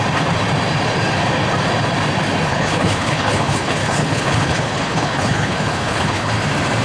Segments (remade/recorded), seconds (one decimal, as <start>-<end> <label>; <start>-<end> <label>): 0.0-2.5 recorded; 2.5-6.3 remade; 6.3-6.8 recorded